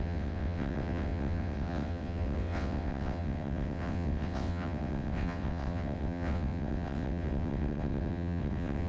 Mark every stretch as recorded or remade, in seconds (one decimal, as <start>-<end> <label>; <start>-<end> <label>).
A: 0.0-8.9 remade